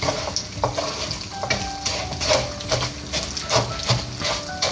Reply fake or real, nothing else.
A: real